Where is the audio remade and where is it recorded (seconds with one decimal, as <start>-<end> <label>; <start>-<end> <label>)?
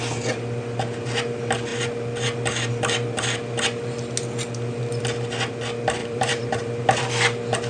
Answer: 0.0-6.0 recorded; 6.0-7.1 remade; 7.1-7.7 recorded